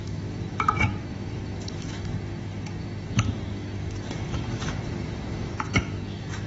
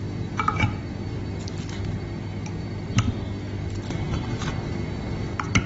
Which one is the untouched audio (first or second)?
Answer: second